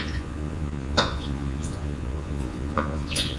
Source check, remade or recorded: remade